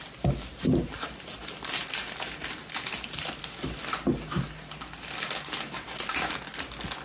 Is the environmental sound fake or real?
real